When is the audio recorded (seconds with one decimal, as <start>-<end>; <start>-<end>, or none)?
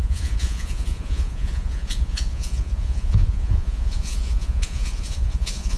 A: none